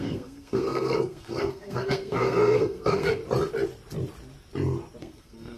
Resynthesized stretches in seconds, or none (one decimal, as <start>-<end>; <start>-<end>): 0.0-3.2; 5.0-5.6